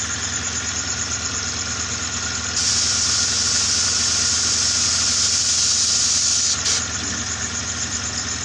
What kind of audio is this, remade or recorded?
recorded